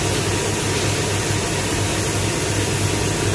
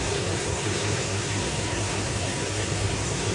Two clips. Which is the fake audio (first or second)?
second